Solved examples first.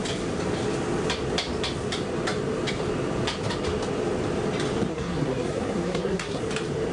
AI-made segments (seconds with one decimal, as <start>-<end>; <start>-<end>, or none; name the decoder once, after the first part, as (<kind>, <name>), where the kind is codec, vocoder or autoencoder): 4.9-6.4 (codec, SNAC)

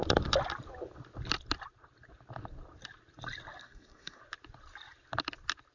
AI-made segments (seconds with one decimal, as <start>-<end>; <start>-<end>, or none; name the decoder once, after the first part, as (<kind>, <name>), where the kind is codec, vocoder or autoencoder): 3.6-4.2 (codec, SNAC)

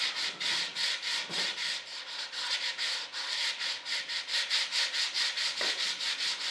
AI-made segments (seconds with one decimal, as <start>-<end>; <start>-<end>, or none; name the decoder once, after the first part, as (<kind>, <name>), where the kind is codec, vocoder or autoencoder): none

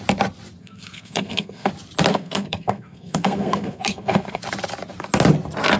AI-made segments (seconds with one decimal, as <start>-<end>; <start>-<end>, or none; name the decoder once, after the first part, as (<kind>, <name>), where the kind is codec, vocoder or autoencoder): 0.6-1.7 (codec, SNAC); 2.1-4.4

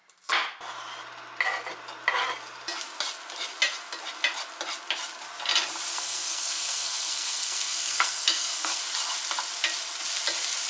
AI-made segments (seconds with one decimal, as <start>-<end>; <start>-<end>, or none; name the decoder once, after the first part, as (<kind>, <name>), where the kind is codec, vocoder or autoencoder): 5.9-8.8 (codec, SNAC)

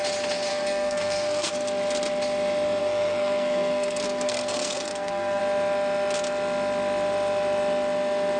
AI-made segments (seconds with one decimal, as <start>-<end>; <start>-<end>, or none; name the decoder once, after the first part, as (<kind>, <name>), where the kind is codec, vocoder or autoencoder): 0.5-1.5 (codec, SNAC); 2.8-5.4

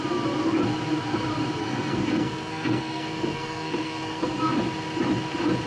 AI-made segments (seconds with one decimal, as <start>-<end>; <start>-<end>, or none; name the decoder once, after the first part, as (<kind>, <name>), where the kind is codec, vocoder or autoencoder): 1.6-4.5 (codec, SNAC)

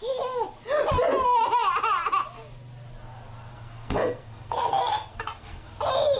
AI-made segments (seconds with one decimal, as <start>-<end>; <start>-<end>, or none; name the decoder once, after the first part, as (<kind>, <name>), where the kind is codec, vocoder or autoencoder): 3.5-5.7 (codec, SNAC)